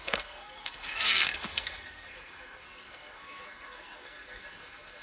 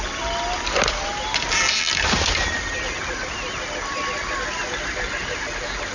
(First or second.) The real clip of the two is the second